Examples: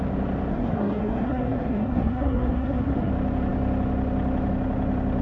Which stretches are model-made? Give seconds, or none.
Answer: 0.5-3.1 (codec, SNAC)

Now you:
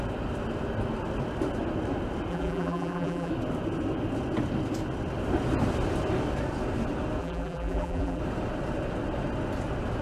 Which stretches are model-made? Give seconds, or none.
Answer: 2.3-3.3 (vocoder, BigVGAN v2); 7.2-8.2

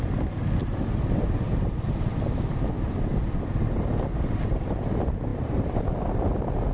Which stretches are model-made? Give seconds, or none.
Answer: 0.0-0.6 (vocoder, BigVGAN v2); 4.6-6.7

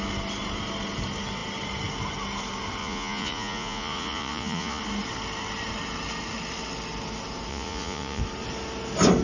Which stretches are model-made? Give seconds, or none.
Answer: 2.8-4.8 (vocoder, Vocos); 7.5-8.2